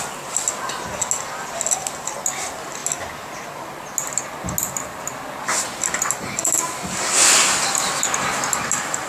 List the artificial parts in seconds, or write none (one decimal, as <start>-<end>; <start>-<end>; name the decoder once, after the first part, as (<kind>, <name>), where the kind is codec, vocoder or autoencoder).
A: none